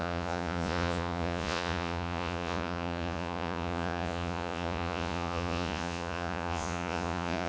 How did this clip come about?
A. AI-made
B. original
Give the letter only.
A